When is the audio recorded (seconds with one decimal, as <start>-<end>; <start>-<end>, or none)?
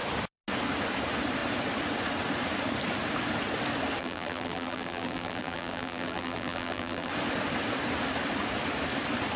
0.0-4.0; 7.1-9.4